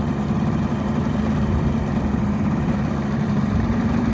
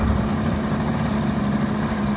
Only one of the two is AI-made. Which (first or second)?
first